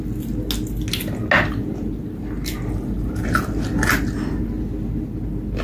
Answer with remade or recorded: recorded